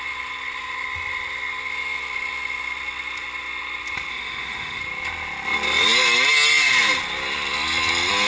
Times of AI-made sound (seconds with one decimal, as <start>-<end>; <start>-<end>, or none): 4.1-4.8